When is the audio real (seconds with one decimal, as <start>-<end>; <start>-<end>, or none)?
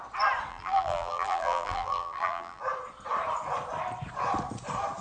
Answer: 0.0-0.5; 2.6-5.0